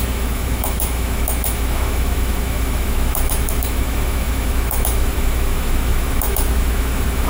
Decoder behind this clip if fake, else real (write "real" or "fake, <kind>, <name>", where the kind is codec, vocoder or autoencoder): fake, autoencoder, DAC-VAE